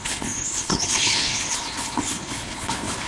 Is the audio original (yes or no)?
no